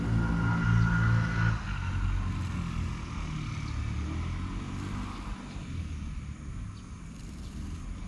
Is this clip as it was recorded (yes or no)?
yes